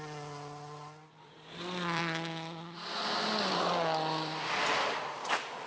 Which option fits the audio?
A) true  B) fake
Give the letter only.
A